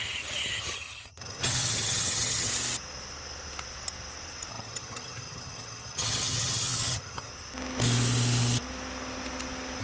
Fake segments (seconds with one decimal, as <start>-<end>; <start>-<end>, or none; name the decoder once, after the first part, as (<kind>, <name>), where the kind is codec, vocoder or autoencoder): 0.0-2.5 (vocoder, HiFi-GAN); 4.5-7.3

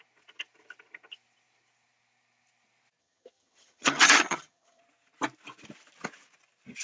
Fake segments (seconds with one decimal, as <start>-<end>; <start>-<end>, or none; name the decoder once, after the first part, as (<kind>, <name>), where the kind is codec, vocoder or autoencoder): 3.0-4.8 (vocoder, HiFi-GAN)

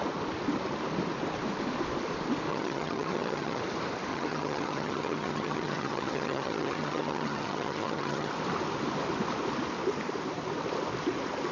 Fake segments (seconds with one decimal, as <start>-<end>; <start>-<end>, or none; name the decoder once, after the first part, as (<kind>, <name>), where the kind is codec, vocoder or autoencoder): 2.5-3.6 (vocoder, HiFi-GAN); 4.1-8.3

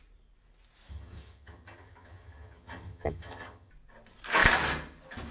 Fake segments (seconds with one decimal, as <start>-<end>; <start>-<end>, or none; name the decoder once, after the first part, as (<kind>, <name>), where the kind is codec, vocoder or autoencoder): 0.9-3.7 (vocoder, HiFi-GAN)

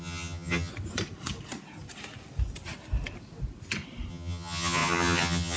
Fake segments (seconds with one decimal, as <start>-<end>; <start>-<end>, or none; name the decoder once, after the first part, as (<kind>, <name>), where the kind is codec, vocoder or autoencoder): 0.0-0.7 (vocoder, HiFi-GAN); 4.1-5.6

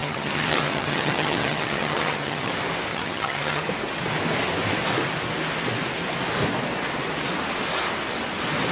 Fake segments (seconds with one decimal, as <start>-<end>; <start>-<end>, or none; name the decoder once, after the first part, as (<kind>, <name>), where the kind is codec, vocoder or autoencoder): 0.0-2.5 (vocoder, HiFi-GAN); 2.9-3.6